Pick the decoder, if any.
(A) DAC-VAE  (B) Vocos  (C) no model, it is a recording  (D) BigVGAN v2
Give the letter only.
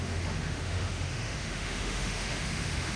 A